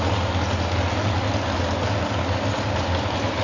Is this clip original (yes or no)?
yes